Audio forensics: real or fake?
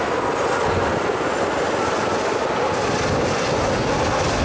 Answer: real